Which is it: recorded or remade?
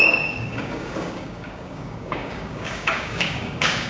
remade